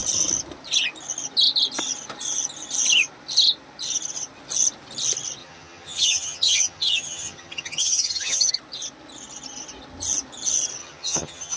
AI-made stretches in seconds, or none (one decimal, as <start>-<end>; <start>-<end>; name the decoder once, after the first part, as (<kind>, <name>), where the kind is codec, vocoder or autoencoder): 5.4-8.5 (vocoder, HiFi-GAN); 10.8-11.6